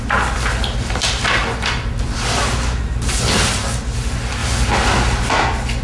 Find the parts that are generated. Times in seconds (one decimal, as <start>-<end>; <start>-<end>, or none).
none